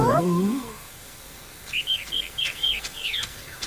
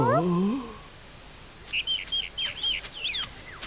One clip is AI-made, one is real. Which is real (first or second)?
second